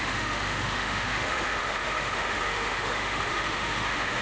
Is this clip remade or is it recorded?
remade